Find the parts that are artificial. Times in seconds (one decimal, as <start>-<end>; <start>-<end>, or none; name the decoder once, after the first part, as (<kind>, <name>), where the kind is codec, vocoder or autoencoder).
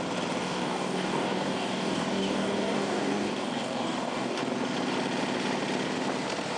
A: 0.4-4.4 (codec, DAC)